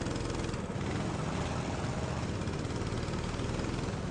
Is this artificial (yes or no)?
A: no